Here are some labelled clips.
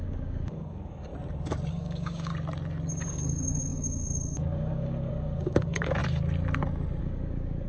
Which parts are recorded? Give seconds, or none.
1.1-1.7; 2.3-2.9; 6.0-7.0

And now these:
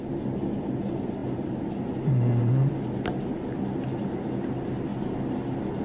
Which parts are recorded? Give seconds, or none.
0.0-5.8

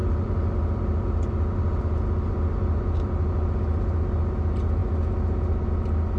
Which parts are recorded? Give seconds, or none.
0.0-6.2

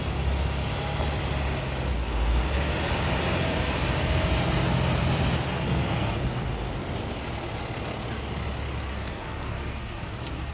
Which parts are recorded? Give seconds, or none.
0.0-5.5; 6.2-8.9